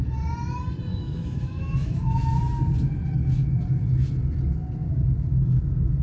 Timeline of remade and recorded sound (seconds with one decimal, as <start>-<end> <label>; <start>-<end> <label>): 0.0-0.9 recorded; 0.9-2.3 remade; 2.3-6.0 recorded